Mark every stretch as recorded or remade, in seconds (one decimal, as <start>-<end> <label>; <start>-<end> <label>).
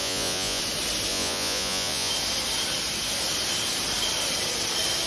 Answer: 0.0-0.6 remade; 0.6-1.1 recorded; 1.1-2.1 remade; 2.1-5.1 recorded